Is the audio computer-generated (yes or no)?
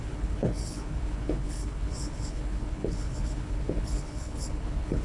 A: yes